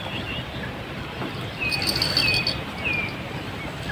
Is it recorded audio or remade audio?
recorded